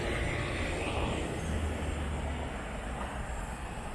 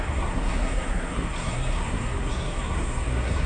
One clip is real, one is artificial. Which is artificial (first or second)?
second